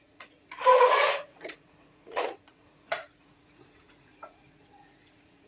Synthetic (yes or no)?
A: yes